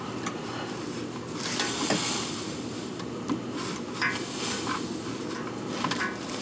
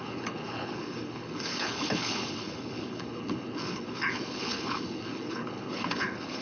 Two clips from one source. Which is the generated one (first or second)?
second